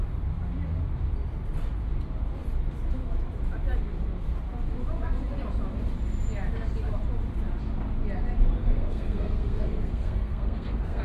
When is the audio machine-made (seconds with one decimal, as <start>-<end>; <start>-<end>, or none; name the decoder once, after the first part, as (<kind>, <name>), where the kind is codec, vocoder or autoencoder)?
8.6-11.0 (codec, SNAC)